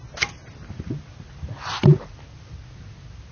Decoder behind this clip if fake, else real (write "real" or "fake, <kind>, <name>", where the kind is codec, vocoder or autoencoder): real